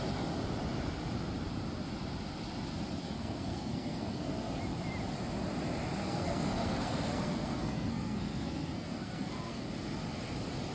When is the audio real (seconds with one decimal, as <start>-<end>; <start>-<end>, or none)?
0.0-3.0; 4.6-6.0; 9.7-10.7